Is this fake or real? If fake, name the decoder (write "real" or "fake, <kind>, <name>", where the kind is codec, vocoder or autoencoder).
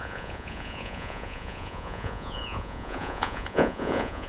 fake, vocoder, Vocos